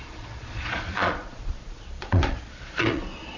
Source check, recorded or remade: remade